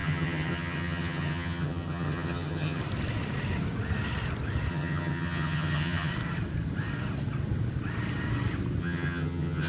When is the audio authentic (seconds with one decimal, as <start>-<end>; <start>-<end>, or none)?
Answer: 2.8-4.7; 6.1-8.8